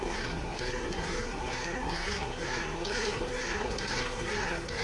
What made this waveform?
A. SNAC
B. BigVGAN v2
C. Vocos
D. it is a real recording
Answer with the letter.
A